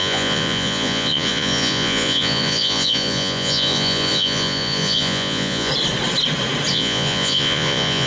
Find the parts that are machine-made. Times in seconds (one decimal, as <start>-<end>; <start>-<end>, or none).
0.0-5.7; 6.7-8.1